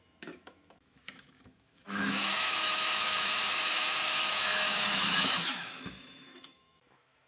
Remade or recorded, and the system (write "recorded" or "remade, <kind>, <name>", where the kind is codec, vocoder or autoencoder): remade, autoencoder, DAC-VAE